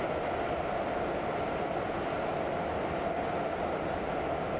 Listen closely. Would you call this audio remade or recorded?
recorded